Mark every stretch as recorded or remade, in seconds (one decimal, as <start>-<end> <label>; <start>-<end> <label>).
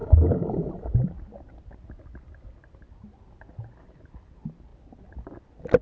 0.0-0.7 remade; 0.7-5.8 recorded